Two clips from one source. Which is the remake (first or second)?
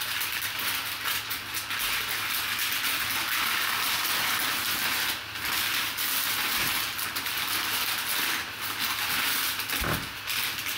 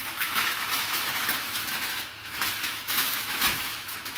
second